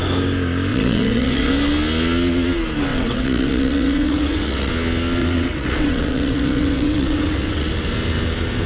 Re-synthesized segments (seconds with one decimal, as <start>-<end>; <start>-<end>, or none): 0.7-1.5; 2.9-4.7; 5.2-7.7